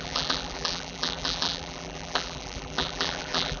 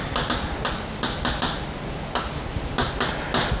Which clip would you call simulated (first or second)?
first